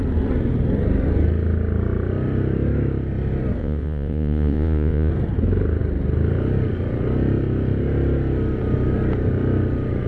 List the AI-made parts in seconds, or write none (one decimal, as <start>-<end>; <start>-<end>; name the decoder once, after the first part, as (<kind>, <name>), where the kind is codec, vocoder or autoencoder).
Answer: 3.6-5.1 (vocoder, Vocos)